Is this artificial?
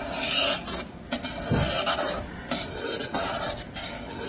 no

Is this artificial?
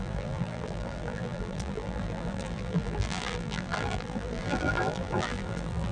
yes